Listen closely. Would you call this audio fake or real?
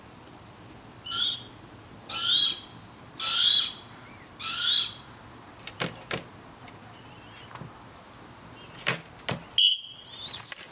real